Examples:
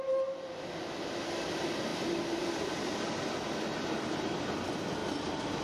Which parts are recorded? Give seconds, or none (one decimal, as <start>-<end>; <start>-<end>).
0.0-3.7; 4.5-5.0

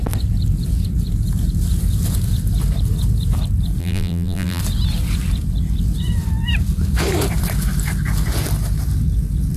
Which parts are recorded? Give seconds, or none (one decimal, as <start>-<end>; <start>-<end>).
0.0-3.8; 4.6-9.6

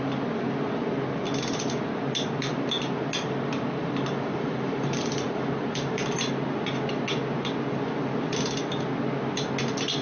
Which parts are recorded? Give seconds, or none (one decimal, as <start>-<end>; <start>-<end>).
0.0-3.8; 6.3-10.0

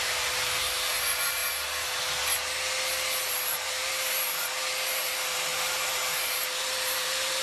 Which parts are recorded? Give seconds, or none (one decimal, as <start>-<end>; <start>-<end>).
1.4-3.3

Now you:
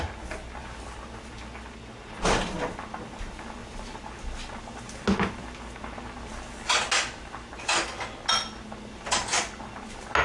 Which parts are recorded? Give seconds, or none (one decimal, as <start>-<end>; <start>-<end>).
0.0-0.6; 1.4-3.6; 4.1-10.2